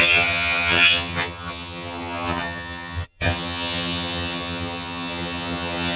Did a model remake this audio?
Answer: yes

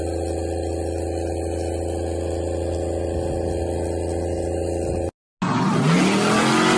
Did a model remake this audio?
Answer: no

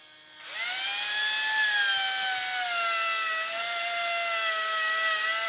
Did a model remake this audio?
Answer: no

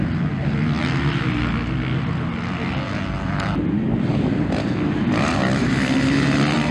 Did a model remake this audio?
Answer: no